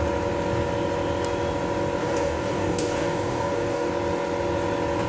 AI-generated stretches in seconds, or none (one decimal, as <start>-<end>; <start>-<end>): 2.0-3.9